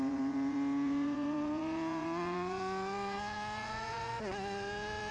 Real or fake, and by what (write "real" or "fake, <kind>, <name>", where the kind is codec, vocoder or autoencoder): fake, vocoder, Vocos